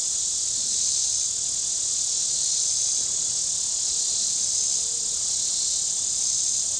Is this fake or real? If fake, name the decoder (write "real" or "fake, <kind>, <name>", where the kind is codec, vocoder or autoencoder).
real